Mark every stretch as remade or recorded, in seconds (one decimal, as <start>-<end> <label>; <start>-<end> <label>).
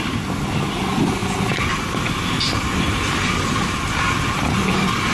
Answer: 0.0-5.1 recorded